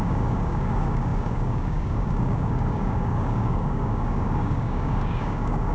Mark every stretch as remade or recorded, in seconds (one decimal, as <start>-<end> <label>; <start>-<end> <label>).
0.0-5.7 remade